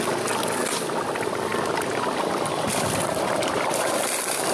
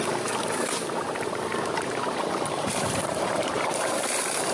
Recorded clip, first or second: first